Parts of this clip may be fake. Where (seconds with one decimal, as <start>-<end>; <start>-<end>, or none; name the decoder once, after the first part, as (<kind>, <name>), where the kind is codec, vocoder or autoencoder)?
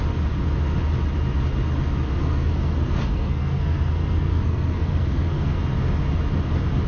2.2-5.6 (codec, SNAC)